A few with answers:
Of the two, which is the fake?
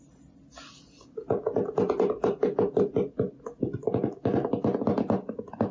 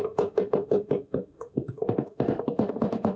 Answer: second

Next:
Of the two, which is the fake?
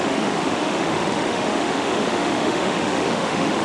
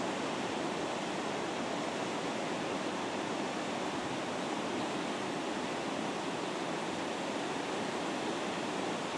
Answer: first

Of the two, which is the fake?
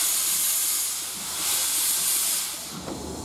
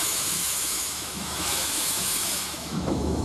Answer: second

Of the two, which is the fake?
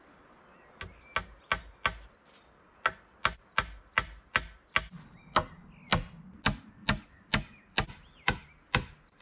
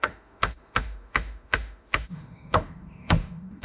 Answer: second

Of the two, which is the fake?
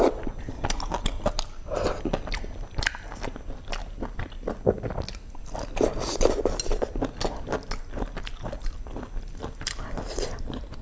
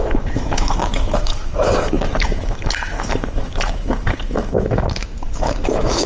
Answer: second